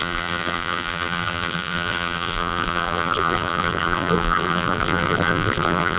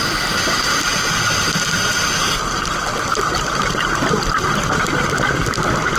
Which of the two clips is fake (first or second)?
first